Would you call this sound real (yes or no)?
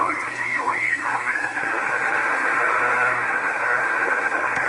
no